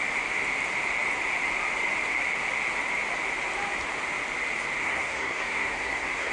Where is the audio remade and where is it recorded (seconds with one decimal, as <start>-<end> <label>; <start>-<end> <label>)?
0.0-4.8 recorded; 4.8-6.3 remade